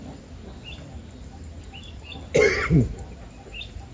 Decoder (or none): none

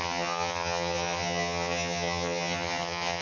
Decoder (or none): vocoder, HiFi-GAN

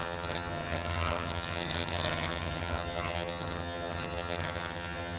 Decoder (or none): vocoder, HiFi-GAN